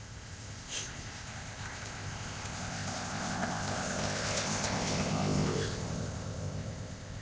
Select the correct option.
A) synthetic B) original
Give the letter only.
A